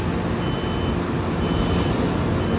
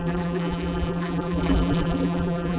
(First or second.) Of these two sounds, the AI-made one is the second